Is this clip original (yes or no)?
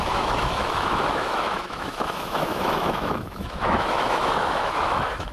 no